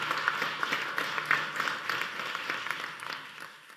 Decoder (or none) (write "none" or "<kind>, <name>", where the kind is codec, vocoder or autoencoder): none